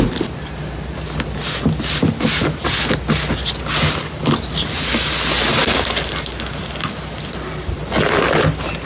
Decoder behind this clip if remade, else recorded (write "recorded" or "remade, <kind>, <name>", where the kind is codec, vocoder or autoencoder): recorded